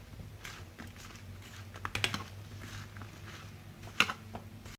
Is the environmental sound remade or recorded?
recorded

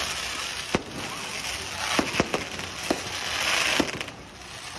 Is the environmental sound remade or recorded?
recorded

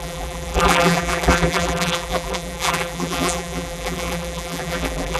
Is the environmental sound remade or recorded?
remade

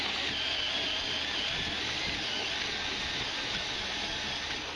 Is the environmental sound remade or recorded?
recorded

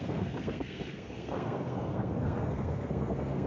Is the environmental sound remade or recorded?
remade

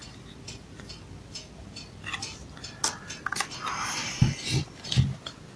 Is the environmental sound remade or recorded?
recorded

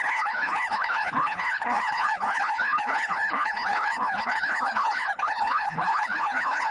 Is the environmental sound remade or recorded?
remade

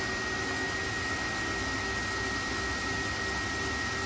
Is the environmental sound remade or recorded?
recorded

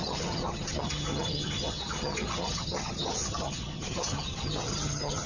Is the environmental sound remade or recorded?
remade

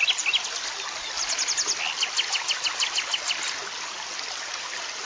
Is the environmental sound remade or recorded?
recorded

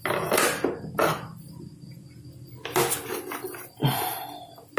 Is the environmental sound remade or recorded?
recorded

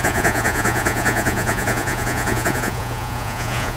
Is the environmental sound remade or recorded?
remade